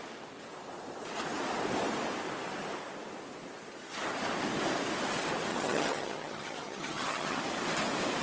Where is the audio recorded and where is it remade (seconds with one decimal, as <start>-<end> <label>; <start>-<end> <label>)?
0.0-5.5 recorded; 5.5-7.4 remade; 7.4-8.2 recorded